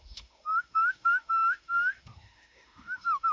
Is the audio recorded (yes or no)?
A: no